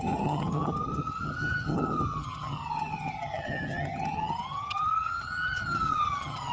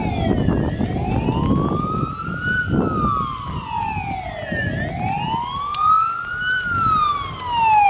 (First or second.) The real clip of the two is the second